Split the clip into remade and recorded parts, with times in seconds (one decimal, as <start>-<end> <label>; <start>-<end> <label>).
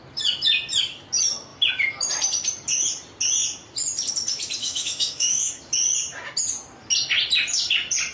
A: 0.0-4.6 recorded; 4.6-5.5 remade; 5.5-8.1 recorded